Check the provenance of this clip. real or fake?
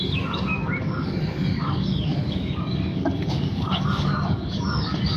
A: fake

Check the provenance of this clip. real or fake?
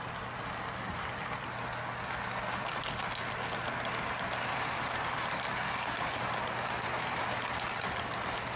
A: real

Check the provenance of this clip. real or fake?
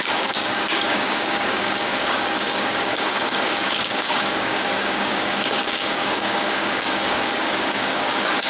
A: fake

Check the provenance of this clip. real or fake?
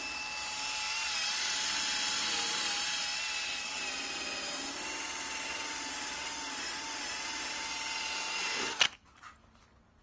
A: real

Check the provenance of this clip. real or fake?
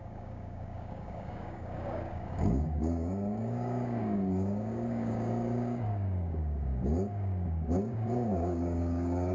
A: fake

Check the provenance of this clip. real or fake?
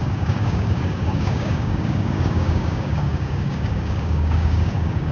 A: fake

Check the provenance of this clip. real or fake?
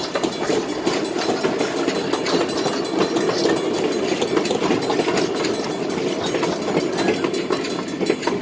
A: real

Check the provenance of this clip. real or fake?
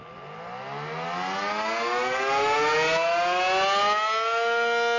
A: real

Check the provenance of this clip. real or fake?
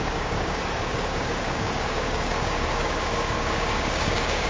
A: fake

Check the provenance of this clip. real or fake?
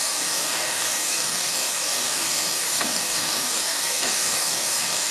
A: fake